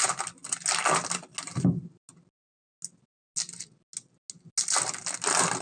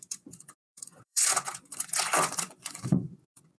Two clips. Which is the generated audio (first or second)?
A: second